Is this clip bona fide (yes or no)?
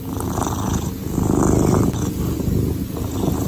yes